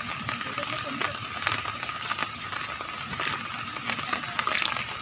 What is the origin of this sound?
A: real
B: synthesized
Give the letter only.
A